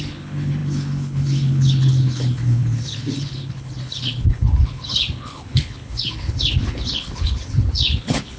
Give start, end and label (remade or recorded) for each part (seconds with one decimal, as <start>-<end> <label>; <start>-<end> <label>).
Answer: 0.0-8.4 remade